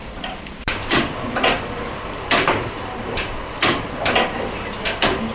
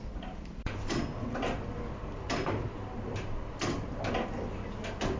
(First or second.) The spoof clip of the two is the first